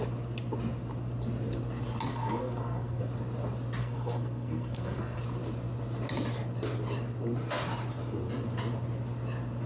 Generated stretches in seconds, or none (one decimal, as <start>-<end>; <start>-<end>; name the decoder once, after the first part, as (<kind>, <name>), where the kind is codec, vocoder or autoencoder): 2.1-3.0 (codec, SNAC); 3.8-5.2